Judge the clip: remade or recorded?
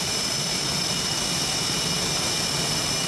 recorded